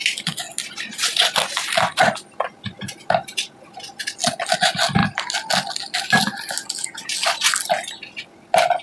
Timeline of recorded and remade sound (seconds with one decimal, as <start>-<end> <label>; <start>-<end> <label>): 0.0-8.8 recorded